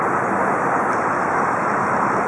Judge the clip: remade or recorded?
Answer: recorded